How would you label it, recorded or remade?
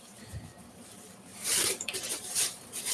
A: remade